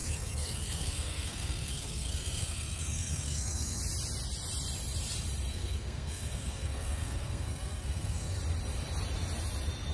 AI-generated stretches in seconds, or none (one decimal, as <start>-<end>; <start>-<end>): 0.0-3.8; 5.5-8.4